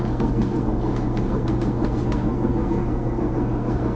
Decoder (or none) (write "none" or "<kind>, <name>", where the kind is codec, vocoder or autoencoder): codec, SNAC